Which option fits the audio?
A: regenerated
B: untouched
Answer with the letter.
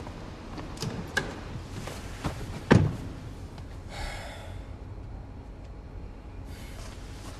B